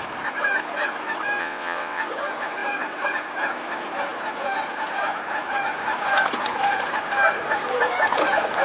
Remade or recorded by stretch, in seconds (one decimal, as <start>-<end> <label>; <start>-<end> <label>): 0.0-1.4 recorded; 1.4-2.0 remade; 2.0-8.6 recorded